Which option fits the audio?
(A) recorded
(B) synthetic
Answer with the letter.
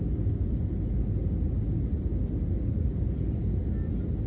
A